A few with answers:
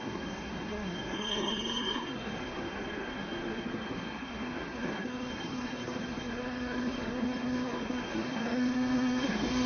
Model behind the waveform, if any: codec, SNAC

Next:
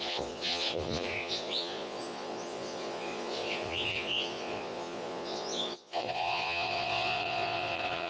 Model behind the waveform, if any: vocoder, Vocos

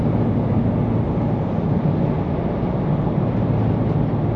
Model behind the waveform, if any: none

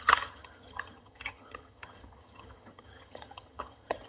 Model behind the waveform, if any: vocoder, HiFi-GAN